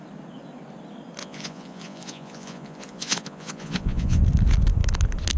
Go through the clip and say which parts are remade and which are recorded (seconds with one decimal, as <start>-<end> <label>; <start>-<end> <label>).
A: 0.0-1.2 recorded; 1.2-4.2 remade; 4.2-5.4 recorded